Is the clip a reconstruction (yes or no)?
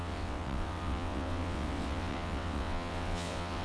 yes